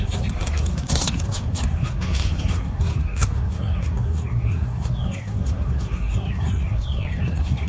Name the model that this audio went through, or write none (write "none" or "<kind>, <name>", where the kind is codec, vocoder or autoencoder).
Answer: codec, SNAC